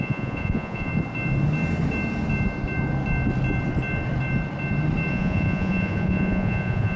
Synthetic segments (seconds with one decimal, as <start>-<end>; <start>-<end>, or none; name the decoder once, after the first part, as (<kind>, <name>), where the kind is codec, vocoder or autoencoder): 0.0-0.9 (vocoder, Vocos); 5.1-7.0

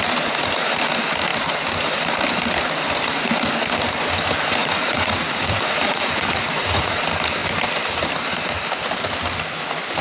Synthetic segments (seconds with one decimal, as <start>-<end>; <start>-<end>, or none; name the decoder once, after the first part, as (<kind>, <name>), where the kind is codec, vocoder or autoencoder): 4.6-7.0 (vocoder, Vocos)

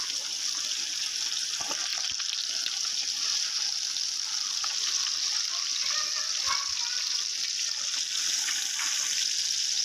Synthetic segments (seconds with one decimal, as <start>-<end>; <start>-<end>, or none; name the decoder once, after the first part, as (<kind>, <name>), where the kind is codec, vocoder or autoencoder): none

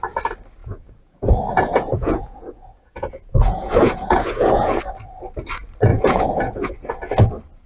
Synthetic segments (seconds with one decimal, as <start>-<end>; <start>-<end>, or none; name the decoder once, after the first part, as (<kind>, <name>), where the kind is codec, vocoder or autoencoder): 0.6-4.8 (vocoder, Vocos); 5.9-6.7

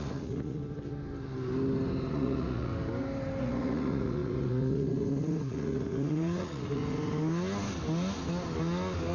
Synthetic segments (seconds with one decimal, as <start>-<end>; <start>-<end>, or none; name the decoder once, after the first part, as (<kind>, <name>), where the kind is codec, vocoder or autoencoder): 0.0-0.6 (vocoder, Vocos); 2.1-2.7; 3.4-6.8

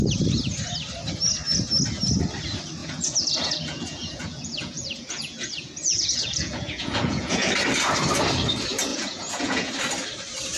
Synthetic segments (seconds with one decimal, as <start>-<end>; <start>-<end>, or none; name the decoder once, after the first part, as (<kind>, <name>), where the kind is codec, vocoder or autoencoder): 2.8-7.5 (vocoder, Vocos); 8.9-9.7